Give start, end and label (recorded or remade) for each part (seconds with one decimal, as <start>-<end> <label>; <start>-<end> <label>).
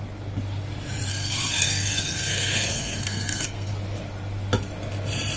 0.0-1.1 recorded; 1.1-3.7 remade; 3.7-5.4 recorded